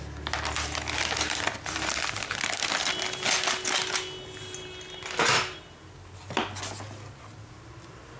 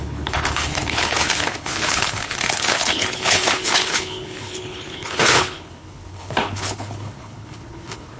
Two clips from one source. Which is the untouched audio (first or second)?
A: first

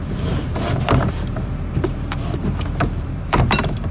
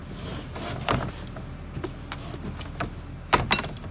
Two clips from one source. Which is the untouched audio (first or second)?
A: second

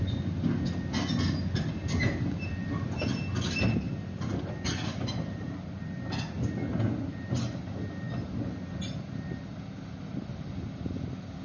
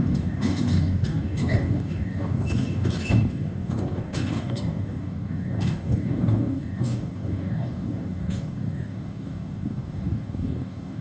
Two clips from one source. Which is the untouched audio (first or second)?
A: first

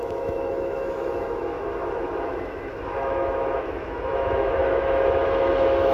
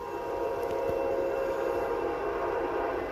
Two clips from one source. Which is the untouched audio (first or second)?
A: second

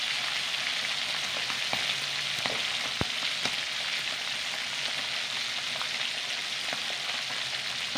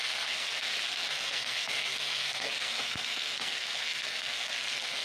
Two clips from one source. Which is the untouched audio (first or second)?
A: first